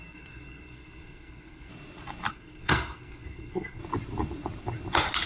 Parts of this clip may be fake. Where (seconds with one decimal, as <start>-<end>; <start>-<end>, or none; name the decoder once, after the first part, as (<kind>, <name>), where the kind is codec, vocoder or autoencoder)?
0.0-1.7 (codec, SNAC); 2.3-3.8